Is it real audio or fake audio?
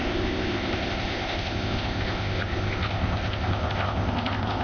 fake